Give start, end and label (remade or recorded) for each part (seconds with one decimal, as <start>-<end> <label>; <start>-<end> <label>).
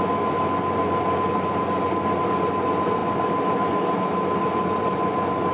0.0-5.5 recorded